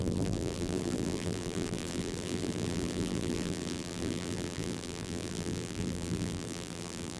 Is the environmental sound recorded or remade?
remade